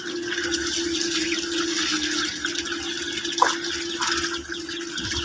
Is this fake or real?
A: real